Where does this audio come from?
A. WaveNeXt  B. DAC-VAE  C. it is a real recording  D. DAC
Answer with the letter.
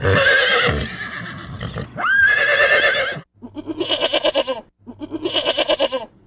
C